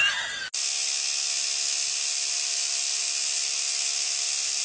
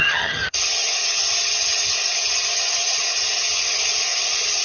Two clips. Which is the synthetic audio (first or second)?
second